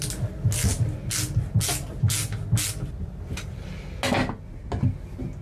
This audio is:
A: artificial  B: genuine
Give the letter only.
B